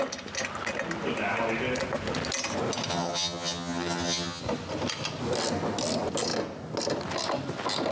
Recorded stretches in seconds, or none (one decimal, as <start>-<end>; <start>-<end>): 0.0-2.9; 4.4-7.9